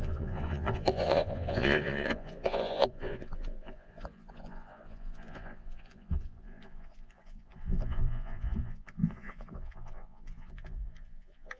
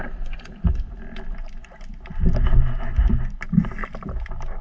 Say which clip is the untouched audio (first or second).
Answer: second